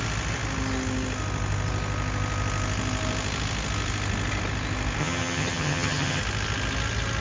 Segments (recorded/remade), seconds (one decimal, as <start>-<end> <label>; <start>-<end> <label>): 0.0-5.0 recorded; 5.0-6.2 remade; 6.2-7.2 recorded